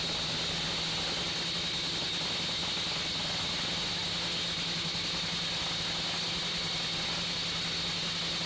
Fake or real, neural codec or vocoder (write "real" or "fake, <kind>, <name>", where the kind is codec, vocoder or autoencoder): real